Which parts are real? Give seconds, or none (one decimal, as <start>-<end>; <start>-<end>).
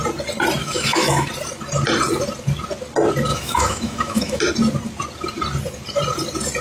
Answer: 0.0-0.6; 1.3-3.3; 4.4-6.6